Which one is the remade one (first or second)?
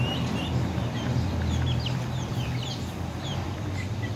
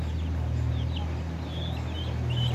first